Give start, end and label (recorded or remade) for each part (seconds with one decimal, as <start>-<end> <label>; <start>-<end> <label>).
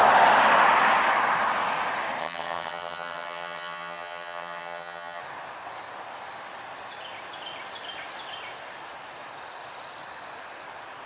0.0-2.2 recorded; 2.2-5.2 remade; 5.2-11.1 recorded